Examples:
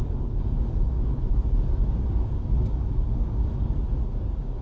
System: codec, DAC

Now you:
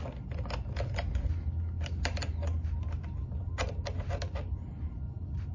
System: none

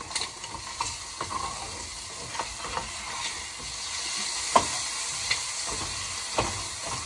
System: none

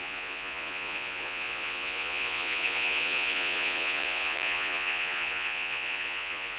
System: vocoder, Vocos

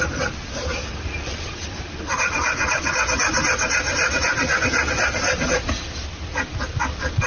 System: none